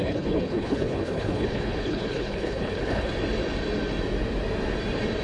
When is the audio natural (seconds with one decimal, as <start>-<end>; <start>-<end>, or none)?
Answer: 3.1-5.2